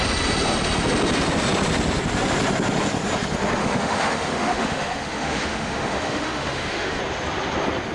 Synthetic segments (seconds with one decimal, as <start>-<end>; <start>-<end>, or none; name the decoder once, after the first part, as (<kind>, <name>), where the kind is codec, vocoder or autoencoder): 3.6-7.0 (autoencoder, DAC-VAE)